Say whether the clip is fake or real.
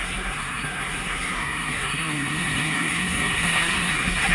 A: fake